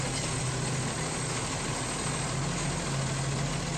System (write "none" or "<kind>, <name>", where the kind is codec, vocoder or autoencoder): none